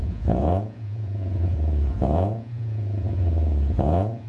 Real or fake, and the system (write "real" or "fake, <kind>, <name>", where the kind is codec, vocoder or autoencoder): fake, vocoder, Vocos